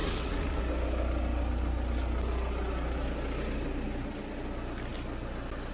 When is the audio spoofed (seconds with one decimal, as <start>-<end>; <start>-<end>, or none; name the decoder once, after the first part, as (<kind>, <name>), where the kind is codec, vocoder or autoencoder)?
0.0-0.6 (vocoder, WaveNeXt)